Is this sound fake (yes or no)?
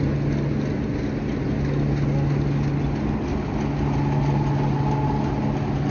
no